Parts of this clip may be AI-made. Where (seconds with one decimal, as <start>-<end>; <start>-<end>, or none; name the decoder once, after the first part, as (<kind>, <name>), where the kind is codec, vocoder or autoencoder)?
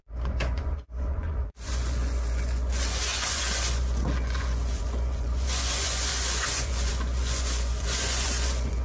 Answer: 0.0-8.8 (vocoder, Vocos)